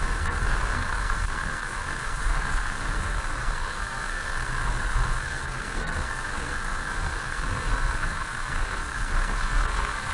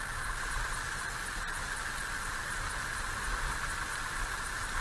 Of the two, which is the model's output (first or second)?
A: first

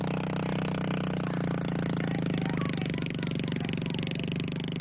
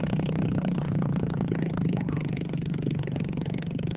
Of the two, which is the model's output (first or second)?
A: second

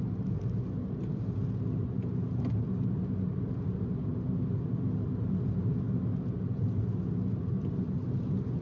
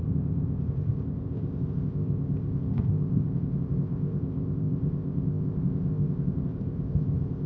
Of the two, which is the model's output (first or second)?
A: second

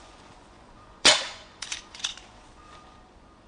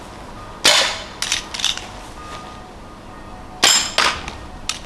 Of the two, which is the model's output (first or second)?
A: first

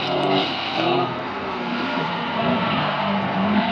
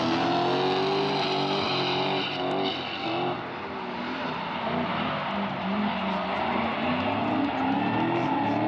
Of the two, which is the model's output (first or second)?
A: first